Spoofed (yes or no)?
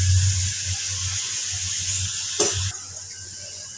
yes